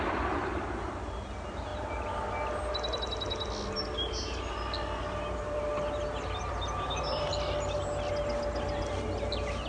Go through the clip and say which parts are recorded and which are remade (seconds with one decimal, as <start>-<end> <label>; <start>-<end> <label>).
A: 0.0-9.7 recorded